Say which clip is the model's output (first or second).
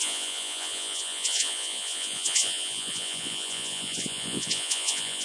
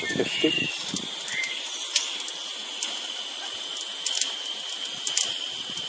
first